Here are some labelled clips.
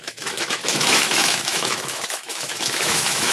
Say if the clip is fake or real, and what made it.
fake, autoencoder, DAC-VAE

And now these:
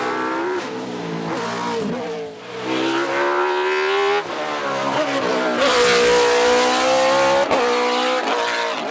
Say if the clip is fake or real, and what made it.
real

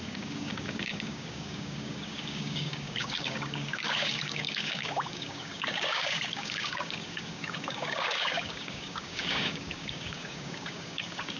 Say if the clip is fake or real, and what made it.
fake, codec, DAC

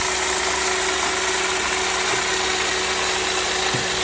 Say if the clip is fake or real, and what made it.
real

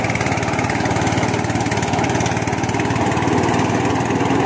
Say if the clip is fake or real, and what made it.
real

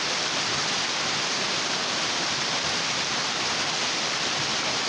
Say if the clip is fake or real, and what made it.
real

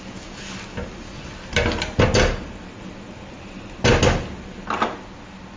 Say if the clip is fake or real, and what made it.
real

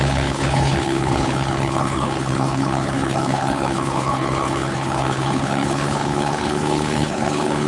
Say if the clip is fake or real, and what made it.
fake, codec, HILCodec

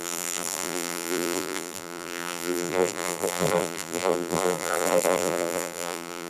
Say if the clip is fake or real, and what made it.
fake, vocoder, BigVGAN v2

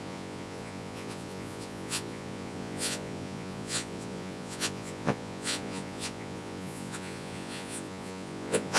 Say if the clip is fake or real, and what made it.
fake, vocoder, Vocos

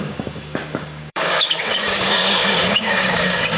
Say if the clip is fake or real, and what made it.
fake, codec, DAC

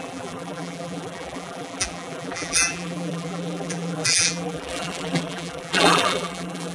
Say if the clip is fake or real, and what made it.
fake, vocoder, BigVGAN v2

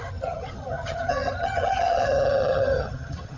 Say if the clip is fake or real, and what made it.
fake, vocoder, HiFi-GAN